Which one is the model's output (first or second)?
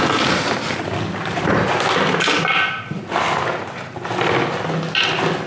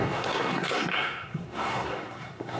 second